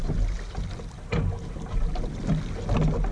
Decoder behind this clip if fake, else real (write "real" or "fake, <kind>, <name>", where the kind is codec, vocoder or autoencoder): real